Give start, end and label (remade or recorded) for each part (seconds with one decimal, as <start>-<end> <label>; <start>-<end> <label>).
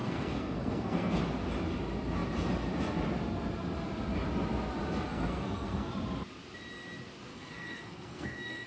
0.0-1.2 remade; 1.2-5.1 recorded; 5.1-5.9 remade; 5.9-7.3 recorded; 7.3-8.7 remade